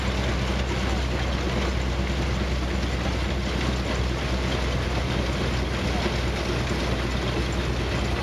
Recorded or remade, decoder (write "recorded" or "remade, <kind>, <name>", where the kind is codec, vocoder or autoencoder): recorded